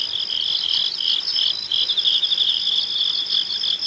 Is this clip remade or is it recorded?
recorded